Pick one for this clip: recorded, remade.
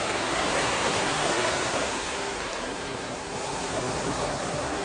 remade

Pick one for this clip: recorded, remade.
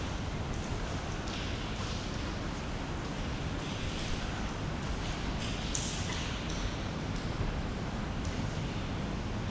recorded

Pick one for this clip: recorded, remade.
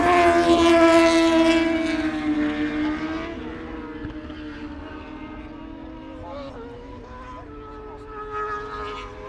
recorded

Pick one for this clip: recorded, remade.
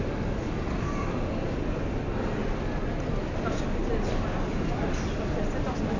recorded